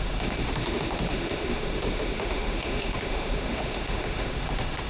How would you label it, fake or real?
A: fake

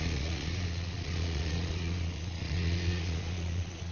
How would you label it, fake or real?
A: fake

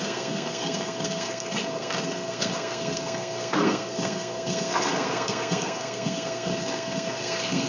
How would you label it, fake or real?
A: fake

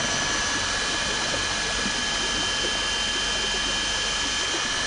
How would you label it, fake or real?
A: real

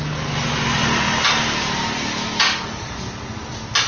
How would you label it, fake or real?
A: real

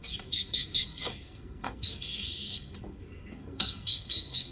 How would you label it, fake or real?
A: fake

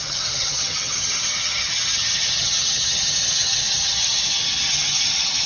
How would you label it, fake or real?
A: fake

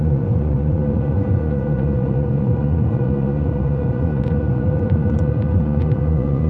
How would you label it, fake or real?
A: fake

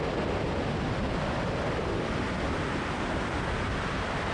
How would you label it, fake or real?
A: real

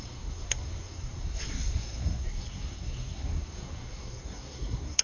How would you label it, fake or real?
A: fake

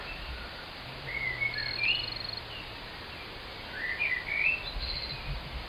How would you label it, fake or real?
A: real